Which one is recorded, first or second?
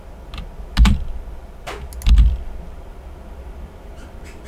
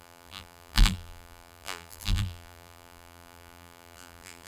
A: first